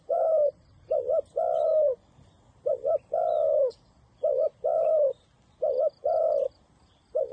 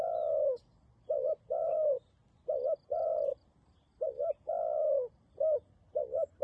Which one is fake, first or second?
first